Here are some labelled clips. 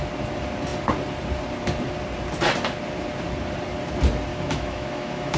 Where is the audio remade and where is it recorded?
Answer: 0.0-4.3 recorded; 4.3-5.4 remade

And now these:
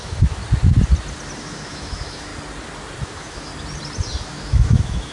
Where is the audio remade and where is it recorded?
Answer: 0.0-0.4 remade; 0.4-1.4 recorded; 1.4-2.3 remade; 2.3-3.0 recorded; 3.0-3.5 remade; 3.5-4.2 recorded; 4.2-5.1 remade

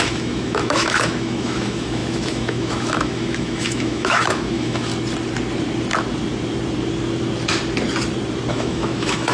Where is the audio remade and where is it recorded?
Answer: 0.0-4.9 remade; 4.9-8.5 recorded; 8.5-9.3 remade

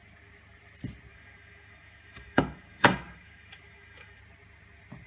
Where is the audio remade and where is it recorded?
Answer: 0.0-1.1 recorded; 1.1-4.2 remade; 4.2-5.1 recorded

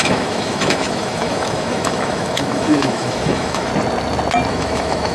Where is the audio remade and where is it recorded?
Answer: 0.0-3.7 remade; 3.7-4.5 recorded; 4.5-5.1 remade

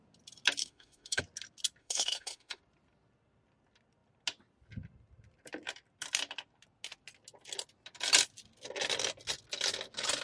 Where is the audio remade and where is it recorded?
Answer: 0.0-0.6 recorded; 0.6-1.2 remade; 1.2-1.8 recorded; 1.8-2.6 remade; 2.6-10.2 recorded